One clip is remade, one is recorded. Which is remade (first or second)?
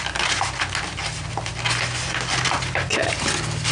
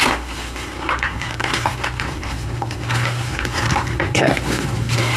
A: second